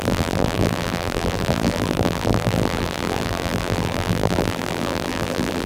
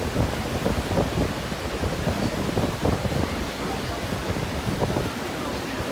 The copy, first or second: first